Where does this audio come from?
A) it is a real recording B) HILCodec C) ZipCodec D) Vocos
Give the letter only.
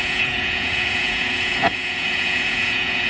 D